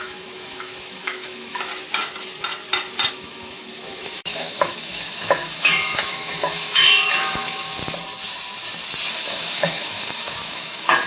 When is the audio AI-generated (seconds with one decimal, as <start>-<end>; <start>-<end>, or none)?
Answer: 0.0-1.7; 3.1-7.8; 9.1-11.1